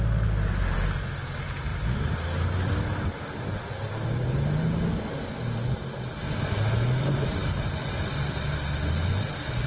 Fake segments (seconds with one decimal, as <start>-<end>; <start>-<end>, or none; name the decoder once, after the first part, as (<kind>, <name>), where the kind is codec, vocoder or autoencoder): none